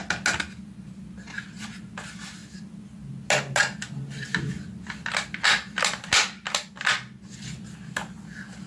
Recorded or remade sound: recorded